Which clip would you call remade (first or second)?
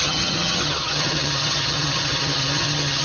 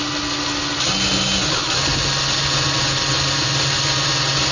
first